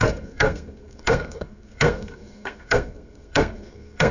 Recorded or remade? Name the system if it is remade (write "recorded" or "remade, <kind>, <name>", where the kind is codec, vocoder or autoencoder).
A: remade, codec, SNAC